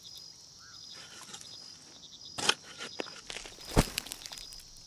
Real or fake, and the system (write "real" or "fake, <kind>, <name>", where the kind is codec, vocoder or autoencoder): real